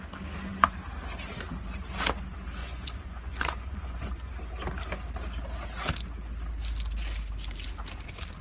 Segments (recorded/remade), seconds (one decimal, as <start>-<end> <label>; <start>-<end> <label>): 0.0-2.6 recorded; 2.6-4.3 remade; 4.3-8.4 recorded